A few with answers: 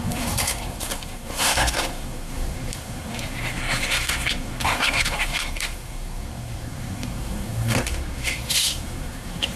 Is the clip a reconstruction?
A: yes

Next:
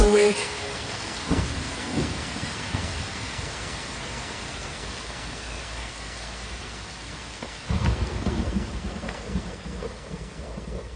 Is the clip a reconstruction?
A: yes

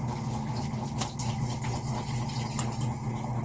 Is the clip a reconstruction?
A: no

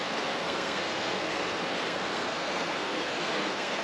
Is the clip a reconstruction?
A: yes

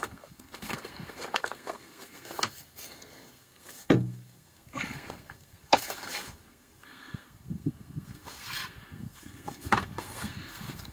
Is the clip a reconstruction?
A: yes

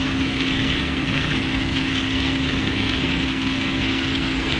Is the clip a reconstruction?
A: yes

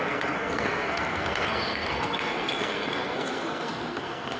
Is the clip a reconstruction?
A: yes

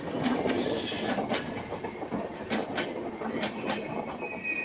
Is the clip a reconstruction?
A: no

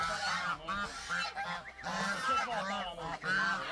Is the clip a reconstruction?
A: no